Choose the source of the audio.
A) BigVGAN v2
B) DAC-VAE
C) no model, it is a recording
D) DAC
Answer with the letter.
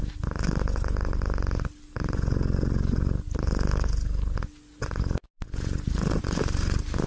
C